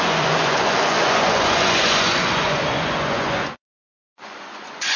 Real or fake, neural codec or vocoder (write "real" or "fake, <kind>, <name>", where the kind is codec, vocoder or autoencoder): fake, vocoder, Vocos